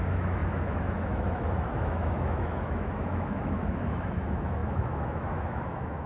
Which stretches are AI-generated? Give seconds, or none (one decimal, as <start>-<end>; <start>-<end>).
0.0-6.1